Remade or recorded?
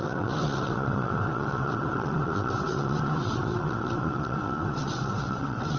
remade